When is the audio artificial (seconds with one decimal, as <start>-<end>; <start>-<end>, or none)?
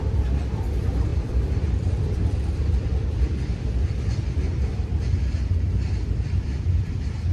0.0-7.3